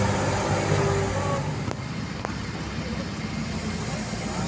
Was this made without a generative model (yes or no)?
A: yes